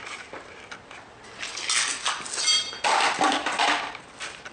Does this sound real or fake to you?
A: real